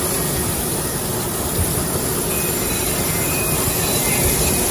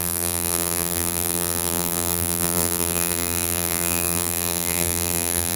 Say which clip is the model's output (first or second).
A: second